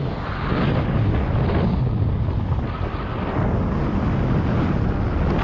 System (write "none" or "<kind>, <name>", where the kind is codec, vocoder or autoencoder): none